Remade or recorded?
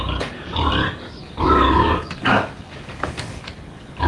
remade